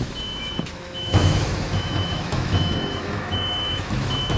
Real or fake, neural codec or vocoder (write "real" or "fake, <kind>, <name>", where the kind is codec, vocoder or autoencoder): fake, autoencoder, DAC-VAE